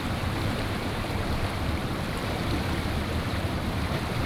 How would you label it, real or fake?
fake